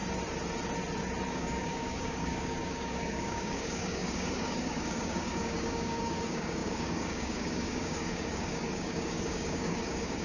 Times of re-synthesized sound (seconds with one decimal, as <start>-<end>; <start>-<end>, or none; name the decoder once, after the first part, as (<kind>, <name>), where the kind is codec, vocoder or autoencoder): 1.3-10.2 (codec, DAC)